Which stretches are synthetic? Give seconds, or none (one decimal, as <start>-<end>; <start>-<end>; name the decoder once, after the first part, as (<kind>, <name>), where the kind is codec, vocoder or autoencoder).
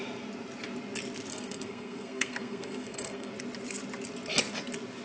1.3-3.3 (codec, SNAC)